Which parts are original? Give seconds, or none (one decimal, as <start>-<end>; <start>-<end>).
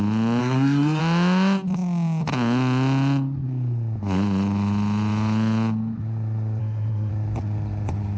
0.0-0.4; 1.0-6.6; 7.1-8.2